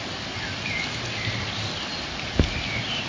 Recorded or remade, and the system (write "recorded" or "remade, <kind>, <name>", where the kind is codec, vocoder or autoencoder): recorded